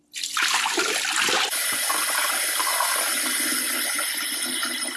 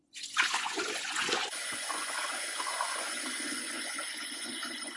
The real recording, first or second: first